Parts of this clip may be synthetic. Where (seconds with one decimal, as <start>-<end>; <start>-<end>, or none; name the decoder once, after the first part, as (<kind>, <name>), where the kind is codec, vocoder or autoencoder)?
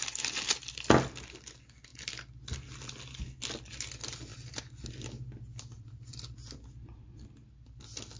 none